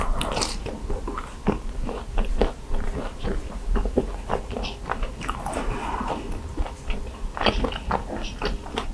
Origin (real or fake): real